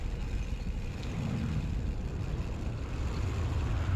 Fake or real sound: real